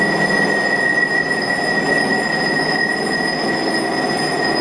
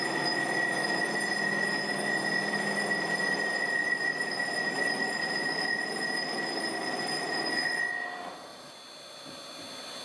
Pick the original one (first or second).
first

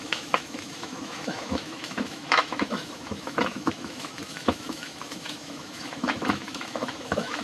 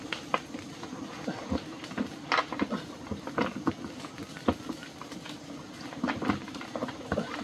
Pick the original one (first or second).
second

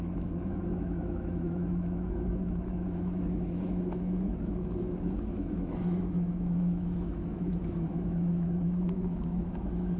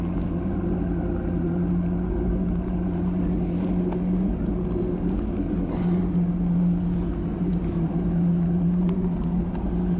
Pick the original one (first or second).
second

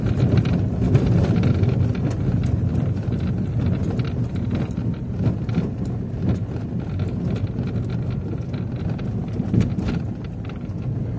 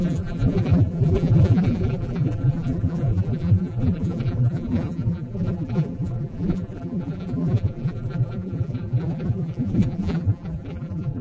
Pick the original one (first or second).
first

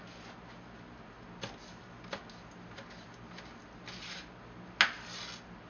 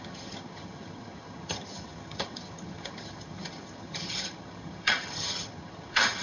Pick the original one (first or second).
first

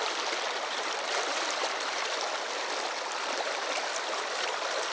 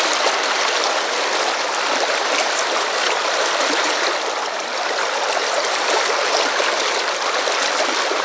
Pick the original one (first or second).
second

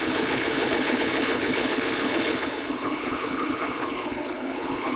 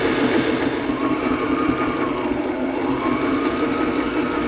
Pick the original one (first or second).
second